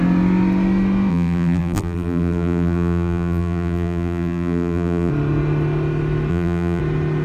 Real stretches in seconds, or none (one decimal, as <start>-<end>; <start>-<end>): 0.0-1.1; 5.1-6.3; 6.8-7.2